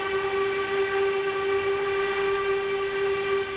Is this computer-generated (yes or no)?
no